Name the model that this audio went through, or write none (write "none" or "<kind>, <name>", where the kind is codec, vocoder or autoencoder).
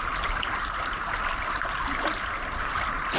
none